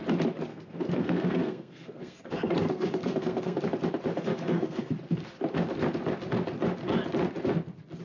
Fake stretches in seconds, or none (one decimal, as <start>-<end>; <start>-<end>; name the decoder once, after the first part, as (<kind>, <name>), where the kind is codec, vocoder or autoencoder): 0.5-3.6 (codec, SNAC); 4.1-4.9